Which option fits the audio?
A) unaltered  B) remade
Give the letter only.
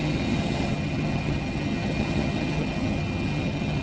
B